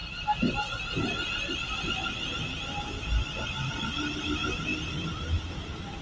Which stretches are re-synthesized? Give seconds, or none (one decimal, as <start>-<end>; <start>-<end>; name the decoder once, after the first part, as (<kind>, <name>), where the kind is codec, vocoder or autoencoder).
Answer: 4.7-6.0 (vocoder, BigVGAN v2)